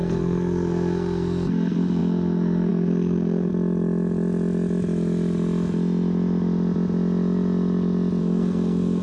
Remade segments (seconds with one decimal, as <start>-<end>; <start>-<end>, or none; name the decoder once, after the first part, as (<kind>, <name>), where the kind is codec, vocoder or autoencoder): 0.0-3.5 (codec, SNAC); 8.2-9.0